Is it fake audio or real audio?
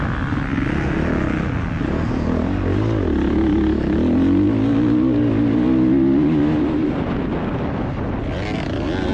real